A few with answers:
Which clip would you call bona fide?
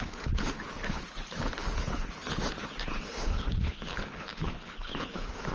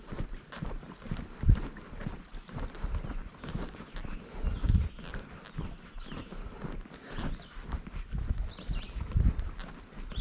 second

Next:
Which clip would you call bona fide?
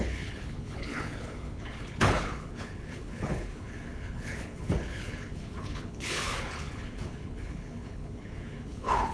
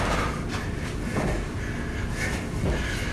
second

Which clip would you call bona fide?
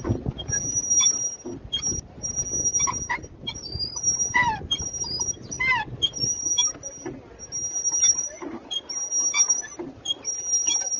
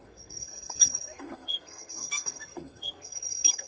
first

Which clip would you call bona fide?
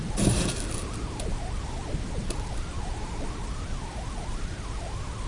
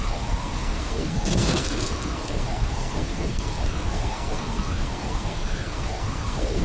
first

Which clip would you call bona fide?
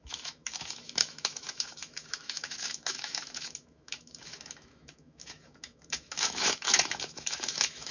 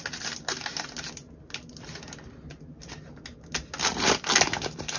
second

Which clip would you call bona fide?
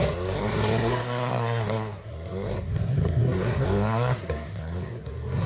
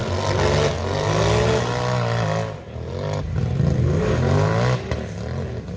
second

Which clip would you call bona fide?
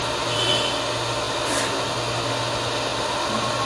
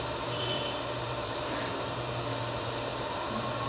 first